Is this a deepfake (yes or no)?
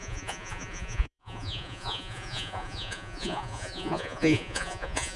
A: yes